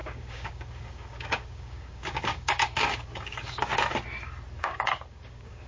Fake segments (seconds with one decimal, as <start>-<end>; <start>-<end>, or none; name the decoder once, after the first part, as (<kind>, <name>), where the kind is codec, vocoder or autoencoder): 0.0-3.7 (codec, DAC); 4.6-5.7